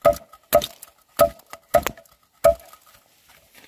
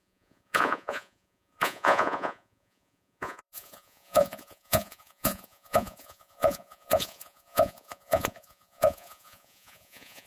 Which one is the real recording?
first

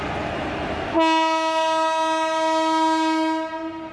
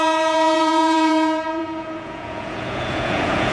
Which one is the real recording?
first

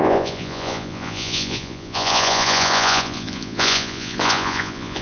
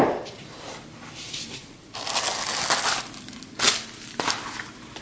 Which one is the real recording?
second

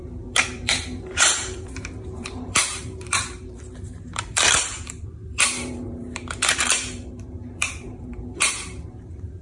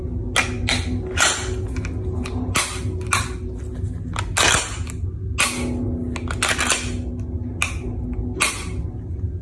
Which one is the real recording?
second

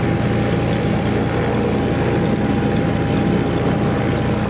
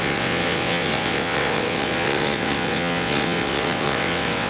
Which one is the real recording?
first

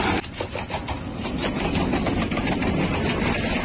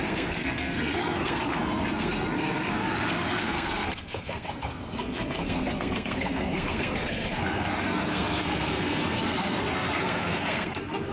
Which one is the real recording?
first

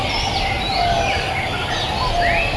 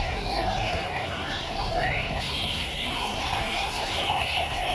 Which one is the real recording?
first